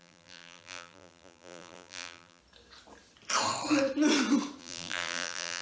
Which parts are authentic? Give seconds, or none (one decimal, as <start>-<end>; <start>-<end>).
2.4-4.6